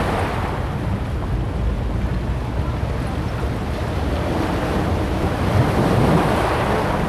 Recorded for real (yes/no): yes